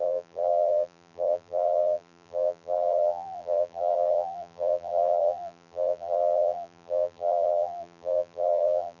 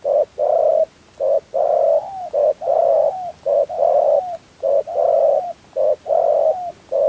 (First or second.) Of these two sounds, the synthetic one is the first